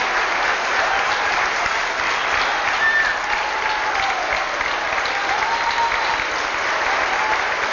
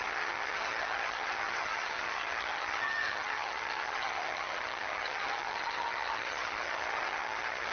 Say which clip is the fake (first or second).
second